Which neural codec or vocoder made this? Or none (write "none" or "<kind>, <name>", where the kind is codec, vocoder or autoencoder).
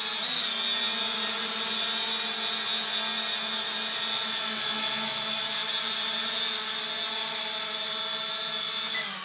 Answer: none